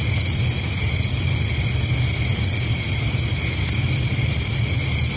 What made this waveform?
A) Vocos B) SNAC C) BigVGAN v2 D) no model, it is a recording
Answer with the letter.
D